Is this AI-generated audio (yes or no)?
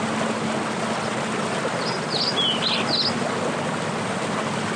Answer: no